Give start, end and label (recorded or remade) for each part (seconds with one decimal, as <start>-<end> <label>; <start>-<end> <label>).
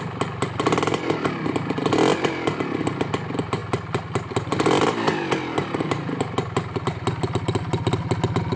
0.0-8.6 recorded